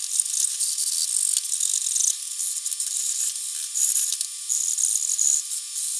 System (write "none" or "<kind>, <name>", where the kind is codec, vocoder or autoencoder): none